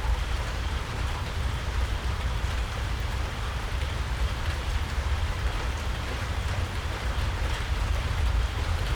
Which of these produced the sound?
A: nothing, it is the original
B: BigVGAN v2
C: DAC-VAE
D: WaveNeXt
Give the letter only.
B